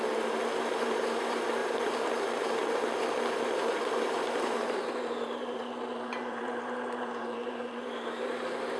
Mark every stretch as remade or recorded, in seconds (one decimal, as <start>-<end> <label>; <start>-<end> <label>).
0.0-8.8 remade